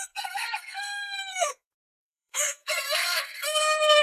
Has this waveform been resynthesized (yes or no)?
yes